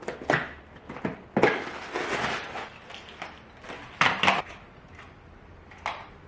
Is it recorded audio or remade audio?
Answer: recorded